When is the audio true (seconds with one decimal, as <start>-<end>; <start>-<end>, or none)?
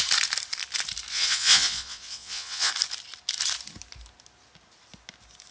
0.0-1.1; 2.7-5.5